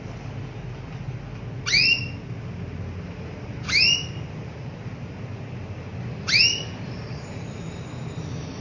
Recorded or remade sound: recorded